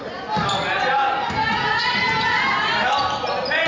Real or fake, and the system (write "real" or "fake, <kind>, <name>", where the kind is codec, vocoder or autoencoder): real